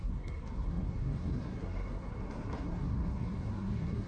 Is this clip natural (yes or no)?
no